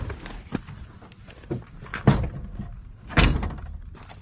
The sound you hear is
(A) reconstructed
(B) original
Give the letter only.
B